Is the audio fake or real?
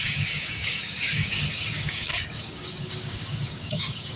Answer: fake